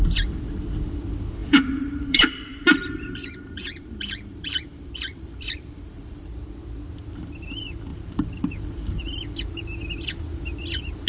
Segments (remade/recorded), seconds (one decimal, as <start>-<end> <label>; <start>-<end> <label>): 0.0-1.4 recorded; 1.4-6.2 remade; 6.2-7.9 recorded; 7.9-9.0 remade; 9.0-11.1 recorded